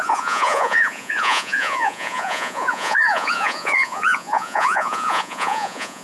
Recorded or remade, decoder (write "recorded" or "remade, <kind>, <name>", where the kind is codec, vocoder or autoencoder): remade, vocoder, Vocos